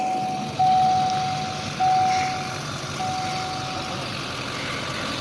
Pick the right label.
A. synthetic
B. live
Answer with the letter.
B